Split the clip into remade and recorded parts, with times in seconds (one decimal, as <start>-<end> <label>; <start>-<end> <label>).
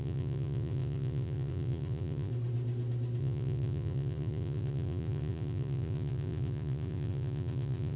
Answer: 0.0-2.3 remade; 2.3-3.2 recorded; 3.2-8.0 remade